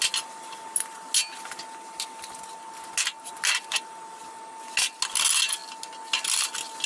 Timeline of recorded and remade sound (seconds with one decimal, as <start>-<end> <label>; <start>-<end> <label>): 0.0-6.9 recorded